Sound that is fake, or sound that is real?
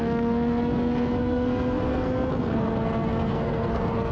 fake